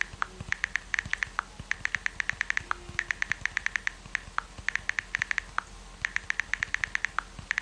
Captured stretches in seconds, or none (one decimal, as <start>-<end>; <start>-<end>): 0.0-7.6